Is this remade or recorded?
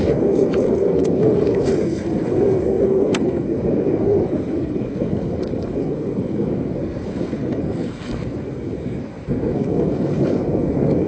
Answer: remade